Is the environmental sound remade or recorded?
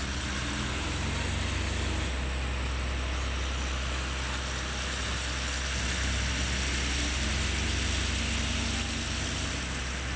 recorded